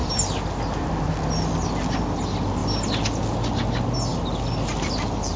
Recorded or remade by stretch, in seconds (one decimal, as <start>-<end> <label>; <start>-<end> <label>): 0.0-5.4 recorded